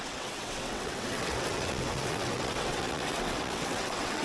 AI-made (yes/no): yes